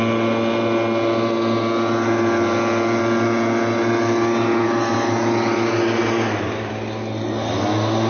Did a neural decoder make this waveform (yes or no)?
no